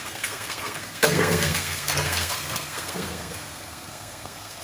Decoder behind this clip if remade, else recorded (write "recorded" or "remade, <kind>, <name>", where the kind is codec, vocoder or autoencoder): remade, codec, SNAC